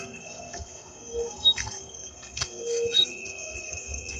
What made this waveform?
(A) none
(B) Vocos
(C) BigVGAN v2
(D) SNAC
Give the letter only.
D